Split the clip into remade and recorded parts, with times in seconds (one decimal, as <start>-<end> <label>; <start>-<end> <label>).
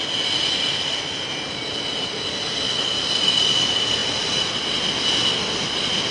0.0-6.1 recorded